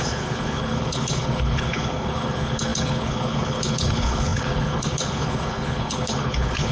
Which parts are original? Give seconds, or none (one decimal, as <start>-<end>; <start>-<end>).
none